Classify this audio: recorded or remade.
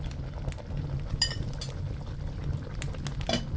recorded